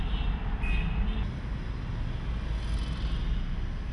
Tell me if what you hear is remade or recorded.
recorded